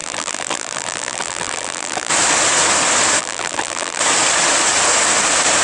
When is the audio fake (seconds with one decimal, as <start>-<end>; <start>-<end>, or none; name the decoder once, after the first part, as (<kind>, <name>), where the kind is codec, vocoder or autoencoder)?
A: 0.0-2.1 (vocoder, BigVGAN v2); 3.2-4.0